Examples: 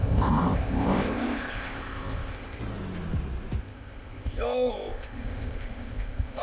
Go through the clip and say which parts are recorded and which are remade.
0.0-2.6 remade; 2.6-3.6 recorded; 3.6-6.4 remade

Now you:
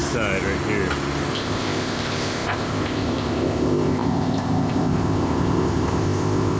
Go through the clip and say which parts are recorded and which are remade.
0.0-1.3 recorded; 1.3-6.6 remade

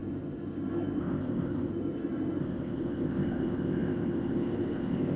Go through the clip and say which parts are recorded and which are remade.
0.0-1.0 recorded; 1.0-1.7 remade; 1.7-2.4 recorded; 2.4-5.2 remade

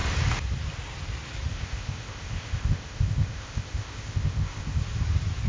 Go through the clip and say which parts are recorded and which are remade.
0.0-1.5 recorded; 1.5-4.8 remade; 4.8-5.5 recorded

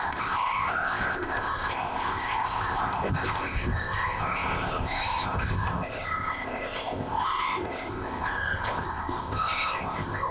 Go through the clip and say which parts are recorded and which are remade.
0.0-10.3 remade